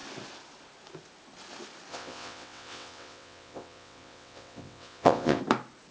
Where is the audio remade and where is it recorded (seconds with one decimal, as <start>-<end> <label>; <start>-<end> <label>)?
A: 0.0-1.9 recorded; 1.9-5.4 remade; 5.4-5.9 recorded